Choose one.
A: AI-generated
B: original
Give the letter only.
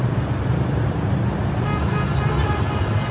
B